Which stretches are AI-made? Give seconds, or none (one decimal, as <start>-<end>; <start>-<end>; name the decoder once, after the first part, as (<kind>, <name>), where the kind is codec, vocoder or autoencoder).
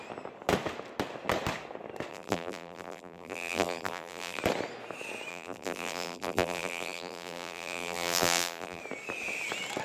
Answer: 2.1-4.4 (vocoder, BigVGAN v2); 5.3-8.8